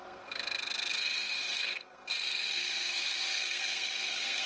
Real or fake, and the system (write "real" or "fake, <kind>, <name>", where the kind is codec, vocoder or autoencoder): fake, codec, SNAC